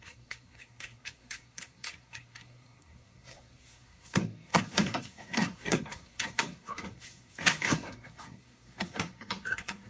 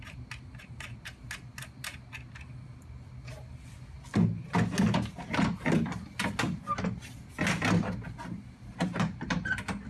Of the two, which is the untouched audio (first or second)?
second